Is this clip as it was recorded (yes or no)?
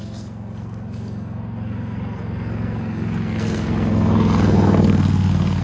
no